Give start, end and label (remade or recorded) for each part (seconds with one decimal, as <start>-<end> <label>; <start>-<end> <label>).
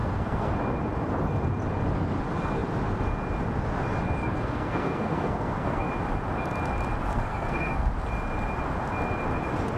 0.0-0.5 remade; 0.5-4.2 recorded; 4.2-5.9 remade; 5.9-7.1 recorded; 7.1-7.9 remade; 7.9-9.8 recorded